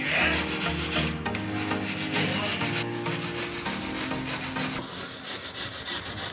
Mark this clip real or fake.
real